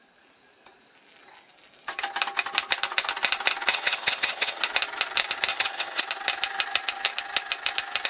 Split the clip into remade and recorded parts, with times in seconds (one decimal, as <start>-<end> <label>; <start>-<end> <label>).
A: 0.0-3.7 recorded; 3.7-4.6 remade; 4.6-5.5 recorded; 5.5-6.0 remade; 6.0-8.1 recorded